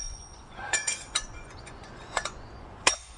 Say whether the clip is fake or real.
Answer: fake